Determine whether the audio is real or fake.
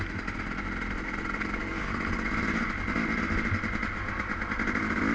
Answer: real